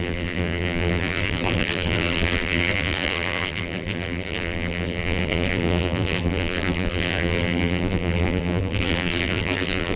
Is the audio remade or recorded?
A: remade